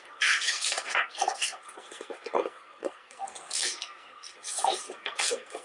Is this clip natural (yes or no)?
no